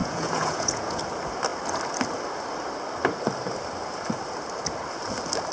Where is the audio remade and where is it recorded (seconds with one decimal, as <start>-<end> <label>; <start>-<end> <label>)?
0.0-1.0 remade; 1.0-5.5 recorded